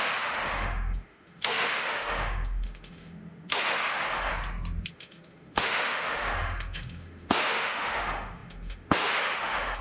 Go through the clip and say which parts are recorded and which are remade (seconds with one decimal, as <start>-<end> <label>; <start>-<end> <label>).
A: 0.0-4.3 remade; 4.3-4.9 recorded; 4.9-9.8 remade